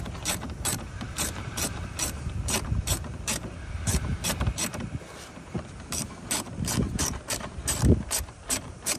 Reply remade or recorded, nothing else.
remade